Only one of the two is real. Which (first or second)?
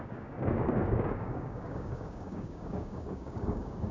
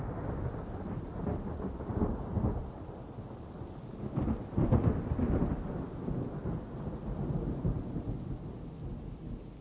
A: second